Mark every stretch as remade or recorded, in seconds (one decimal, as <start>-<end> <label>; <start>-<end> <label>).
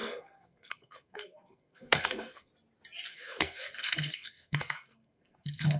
0.0-2.5 remade; 2.5-3.1 recorded; 3.1-5.8 remade